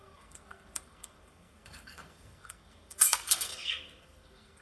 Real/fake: fake